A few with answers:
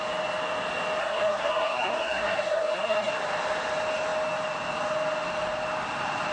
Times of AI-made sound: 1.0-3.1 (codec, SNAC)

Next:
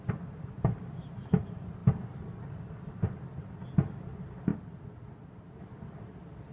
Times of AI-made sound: none

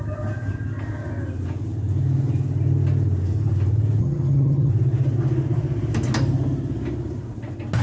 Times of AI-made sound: 4.0-4.7 (vocoder, HiFi-GAN)